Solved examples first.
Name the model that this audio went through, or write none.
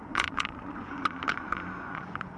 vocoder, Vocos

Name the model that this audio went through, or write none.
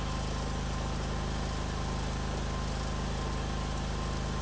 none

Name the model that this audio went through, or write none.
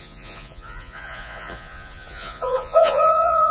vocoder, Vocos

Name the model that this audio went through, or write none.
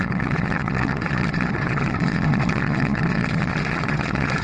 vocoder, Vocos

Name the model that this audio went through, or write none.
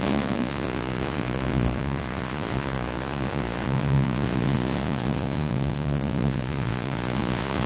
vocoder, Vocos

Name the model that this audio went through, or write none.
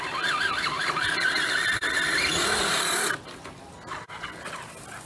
none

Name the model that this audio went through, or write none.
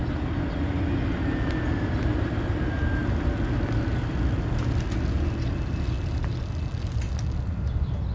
none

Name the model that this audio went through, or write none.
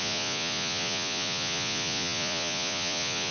vocoder, Vocos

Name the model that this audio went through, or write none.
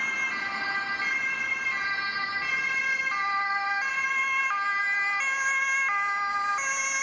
none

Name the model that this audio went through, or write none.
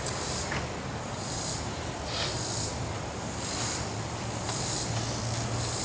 none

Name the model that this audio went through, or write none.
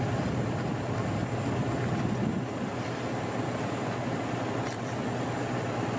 none